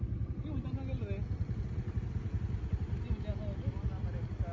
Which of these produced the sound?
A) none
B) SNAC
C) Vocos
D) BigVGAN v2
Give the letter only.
A